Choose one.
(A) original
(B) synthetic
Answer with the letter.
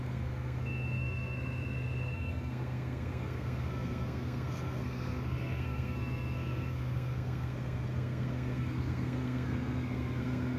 B